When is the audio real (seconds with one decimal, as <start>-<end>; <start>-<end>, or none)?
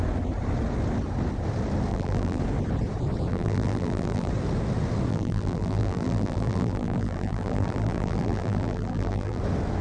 0.0-1.9; 2.4-3.3; 4.3-5.1; 9.4-9.8